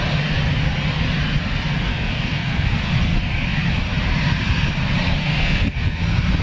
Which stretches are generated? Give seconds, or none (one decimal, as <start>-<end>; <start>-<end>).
1.9-2.8; 5.2-6.0